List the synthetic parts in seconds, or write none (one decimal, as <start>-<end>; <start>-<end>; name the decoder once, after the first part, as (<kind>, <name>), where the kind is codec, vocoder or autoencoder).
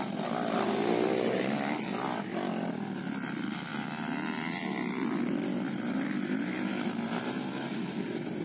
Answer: none